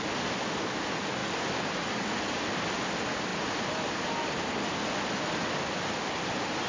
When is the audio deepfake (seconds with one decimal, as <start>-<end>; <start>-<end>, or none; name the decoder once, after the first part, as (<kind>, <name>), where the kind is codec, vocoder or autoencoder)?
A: none